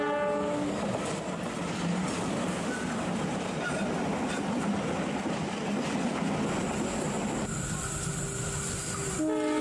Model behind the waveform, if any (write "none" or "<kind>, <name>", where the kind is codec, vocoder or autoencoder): none